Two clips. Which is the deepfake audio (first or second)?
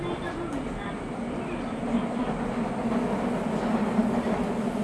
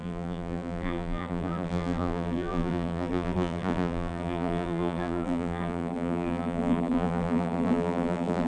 second